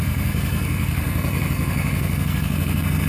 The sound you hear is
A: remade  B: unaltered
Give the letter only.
A